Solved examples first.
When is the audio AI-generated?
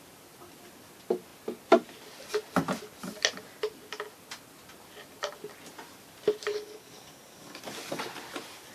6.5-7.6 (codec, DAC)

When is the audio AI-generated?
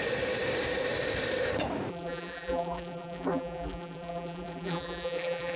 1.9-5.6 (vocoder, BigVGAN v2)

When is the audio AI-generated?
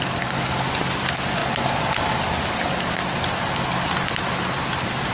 none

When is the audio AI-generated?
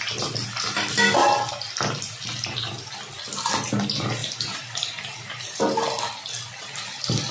4.2-5.6 (vocoder, BigVGAN v2)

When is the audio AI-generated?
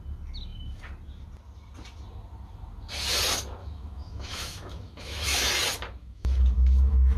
3.6-5.5 (autoencoder, DAC-VAE); 6.0-7.2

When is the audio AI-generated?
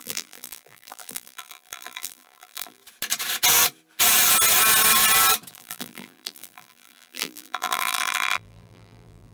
0.0-2.8 (vocoder, BigVGAN v2); 5.5-9.3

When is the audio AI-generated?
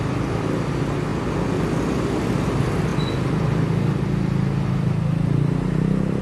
none